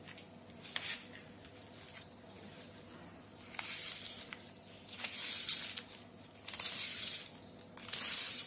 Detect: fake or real real